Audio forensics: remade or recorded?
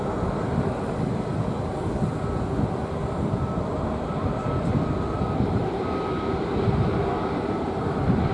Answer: recorded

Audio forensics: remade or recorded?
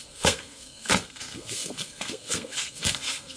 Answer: remade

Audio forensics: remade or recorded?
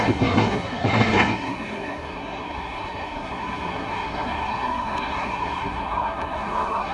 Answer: remade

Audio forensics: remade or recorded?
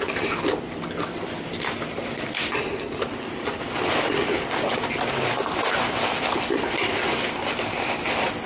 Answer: recorded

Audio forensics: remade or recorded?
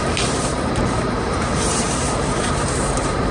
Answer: remade